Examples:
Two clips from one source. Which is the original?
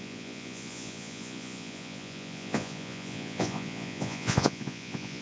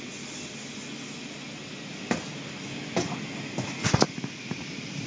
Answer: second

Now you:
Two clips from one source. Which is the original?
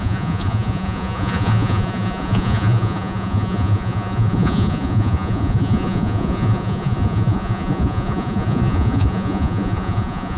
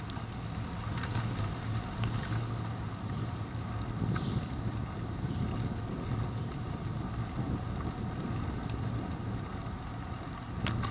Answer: second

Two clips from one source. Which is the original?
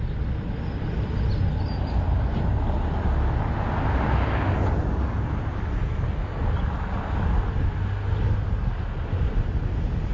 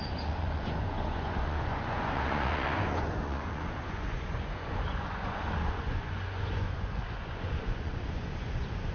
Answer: first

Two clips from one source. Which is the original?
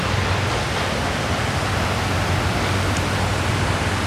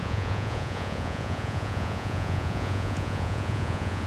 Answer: first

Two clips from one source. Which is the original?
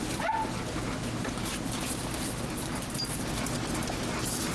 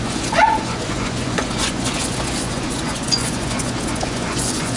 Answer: first